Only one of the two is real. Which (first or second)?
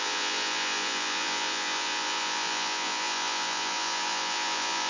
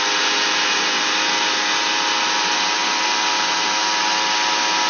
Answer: second